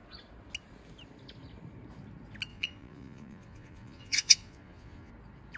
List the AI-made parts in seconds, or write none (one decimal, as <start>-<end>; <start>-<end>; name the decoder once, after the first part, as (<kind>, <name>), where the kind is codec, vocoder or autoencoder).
2.5-5.1 (vocoder, Vocos)